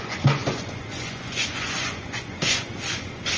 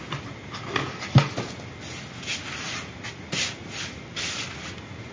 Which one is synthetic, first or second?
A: first